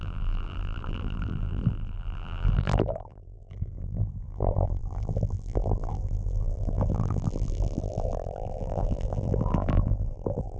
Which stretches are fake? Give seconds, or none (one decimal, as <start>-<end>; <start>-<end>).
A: 0.0-10.6